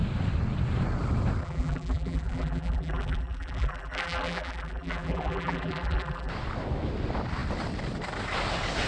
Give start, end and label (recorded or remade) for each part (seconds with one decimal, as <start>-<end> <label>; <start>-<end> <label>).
0.0-1.4 recorded; 1.4-6.3 remade; 6.3-8.9 recorded